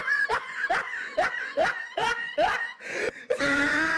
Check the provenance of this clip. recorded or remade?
remade